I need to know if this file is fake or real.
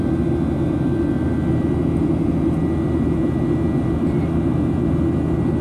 real